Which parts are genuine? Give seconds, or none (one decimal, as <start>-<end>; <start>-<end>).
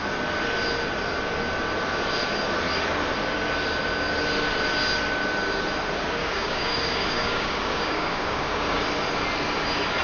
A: 0.0-6.2; 8.8-10.0